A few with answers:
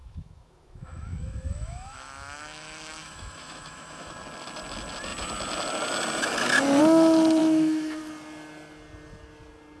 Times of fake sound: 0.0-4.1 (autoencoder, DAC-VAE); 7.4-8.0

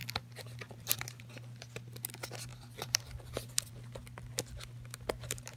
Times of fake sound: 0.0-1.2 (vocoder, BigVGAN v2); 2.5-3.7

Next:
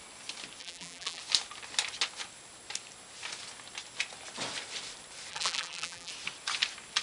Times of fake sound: 0.6-1.2 (vocoder, BigVGAN v2); 5.3-6.1